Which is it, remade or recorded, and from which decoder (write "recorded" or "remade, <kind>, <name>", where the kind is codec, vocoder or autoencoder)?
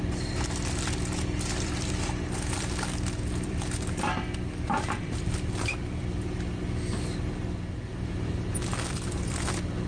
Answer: remade, vocoder, BigVGAN v2